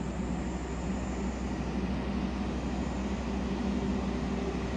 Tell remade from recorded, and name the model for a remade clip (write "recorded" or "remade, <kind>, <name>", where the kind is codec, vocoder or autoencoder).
recorded